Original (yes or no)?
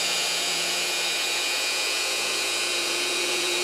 no